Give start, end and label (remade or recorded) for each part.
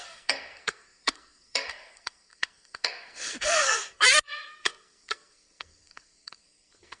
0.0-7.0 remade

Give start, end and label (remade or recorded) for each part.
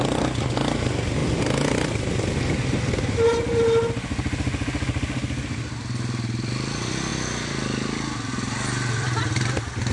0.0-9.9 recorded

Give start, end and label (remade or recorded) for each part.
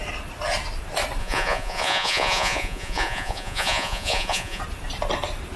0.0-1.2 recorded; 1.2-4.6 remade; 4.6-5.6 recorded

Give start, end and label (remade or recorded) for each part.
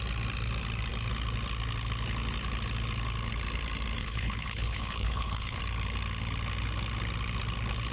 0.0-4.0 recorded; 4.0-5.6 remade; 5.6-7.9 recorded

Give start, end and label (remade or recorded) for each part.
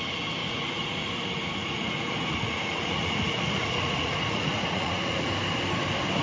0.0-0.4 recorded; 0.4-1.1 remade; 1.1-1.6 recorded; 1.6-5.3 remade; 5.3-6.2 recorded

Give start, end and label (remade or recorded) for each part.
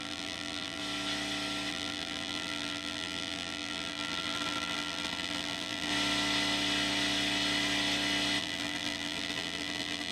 0.0-0.8 remade; 0.8-1.7 recorded; 1.7-5.9 remade; 5.9-8.4 recorded; 8.4-10.1 remade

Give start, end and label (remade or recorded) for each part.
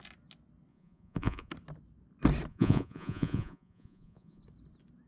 0.0-0.7 recorded; 0.7-1.5 remade; 1.5-2.5 recorded; 2.5-4.4 remade; 4.4-5.1 recorded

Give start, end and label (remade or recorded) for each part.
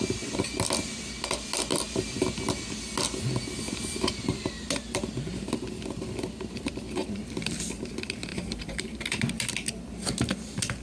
0.0-8.3 recorded; 8.3-9.2 remade; 9.2-10.8 recorded